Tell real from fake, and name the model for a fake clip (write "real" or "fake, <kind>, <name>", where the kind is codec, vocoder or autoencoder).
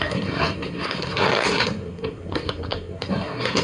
fake, codec, SNAC